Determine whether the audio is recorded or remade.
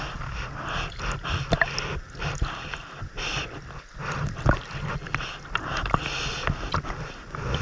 recorded